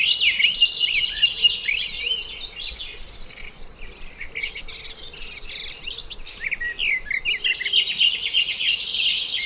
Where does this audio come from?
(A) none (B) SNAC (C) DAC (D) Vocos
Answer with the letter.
A